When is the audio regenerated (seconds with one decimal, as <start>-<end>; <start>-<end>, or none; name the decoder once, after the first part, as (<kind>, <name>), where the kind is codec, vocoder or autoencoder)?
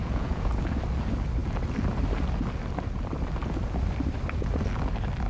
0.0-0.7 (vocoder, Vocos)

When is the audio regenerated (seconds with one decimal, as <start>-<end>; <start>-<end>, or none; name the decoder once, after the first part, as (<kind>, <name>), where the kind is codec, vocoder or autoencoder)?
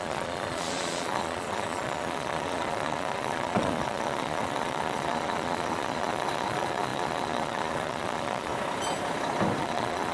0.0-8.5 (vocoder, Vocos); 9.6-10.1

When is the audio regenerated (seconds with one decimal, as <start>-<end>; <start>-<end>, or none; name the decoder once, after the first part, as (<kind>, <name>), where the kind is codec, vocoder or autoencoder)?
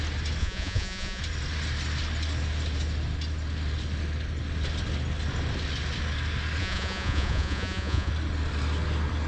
0.4-1.2 (vocoder, Vocos); 6.6-8.1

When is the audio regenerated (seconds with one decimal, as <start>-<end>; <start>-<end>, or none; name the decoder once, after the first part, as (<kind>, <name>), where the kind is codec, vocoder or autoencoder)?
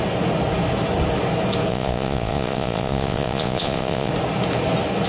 1.7-4.1 (vocoder, Vocos)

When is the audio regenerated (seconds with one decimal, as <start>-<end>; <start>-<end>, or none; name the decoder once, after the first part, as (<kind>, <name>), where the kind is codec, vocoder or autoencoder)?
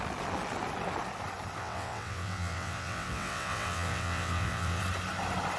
1.6-4.8 (vocoder, WaveNeXt)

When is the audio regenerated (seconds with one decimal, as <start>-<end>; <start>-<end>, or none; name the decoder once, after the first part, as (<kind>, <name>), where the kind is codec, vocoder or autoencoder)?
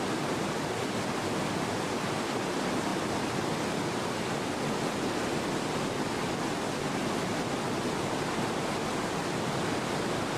none